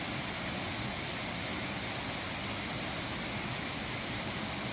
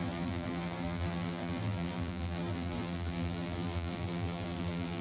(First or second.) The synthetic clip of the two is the second